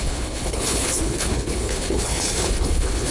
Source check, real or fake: fake